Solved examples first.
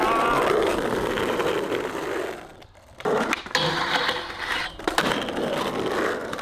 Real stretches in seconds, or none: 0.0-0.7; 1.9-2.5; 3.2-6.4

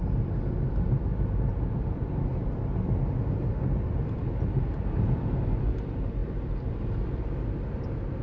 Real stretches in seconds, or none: 0.0-8.2

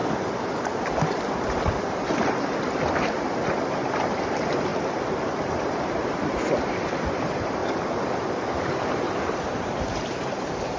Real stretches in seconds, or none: 0.0-4.1; 7.6-8.5

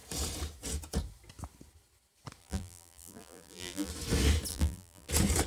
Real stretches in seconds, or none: 0.0-2.4; 3.9-4.5; 5.1-5.5

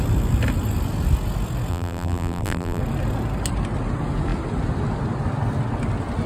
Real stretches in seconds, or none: 0.0-1.7; 2.8-6.3

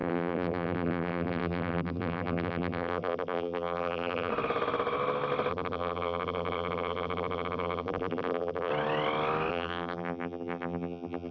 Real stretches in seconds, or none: 4.3-5.5; 8.7-9.5

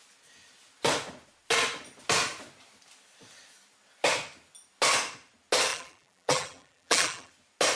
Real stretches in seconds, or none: 0.0-5.7; 7.3-7.8

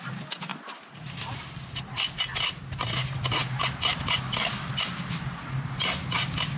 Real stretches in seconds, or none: 0.0-6.6